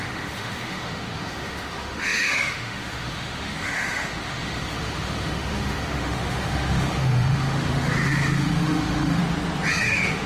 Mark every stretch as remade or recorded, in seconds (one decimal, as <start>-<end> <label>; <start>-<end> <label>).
0.0-9.2 remade; 9.2-9.8 recorded; 9.8-10.3 remade